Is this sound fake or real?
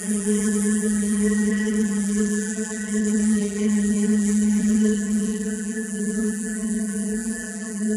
fake